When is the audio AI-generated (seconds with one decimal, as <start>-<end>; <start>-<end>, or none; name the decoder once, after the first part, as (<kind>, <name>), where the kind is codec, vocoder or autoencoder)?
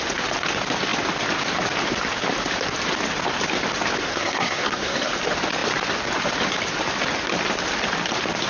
4.0-5.1 (codec, SNAC)